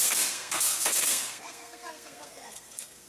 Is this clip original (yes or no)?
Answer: no